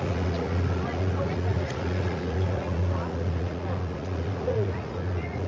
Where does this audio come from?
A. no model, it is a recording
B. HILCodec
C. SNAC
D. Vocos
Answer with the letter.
D